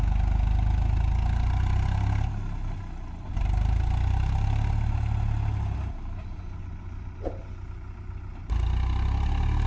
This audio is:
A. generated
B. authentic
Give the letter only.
B